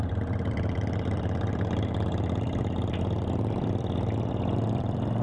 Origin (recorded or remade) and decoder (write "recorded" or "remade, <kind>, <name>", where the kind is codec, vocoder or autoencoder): remade, vocoder, BigVGAN v2